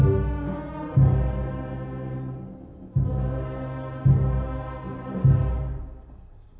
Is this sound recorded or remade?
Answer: recorded